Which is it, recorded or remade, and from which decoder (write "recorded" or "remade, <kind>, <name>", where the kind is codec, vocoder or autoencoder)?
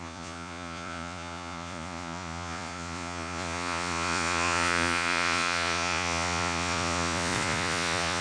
remade, vocoder, Vocos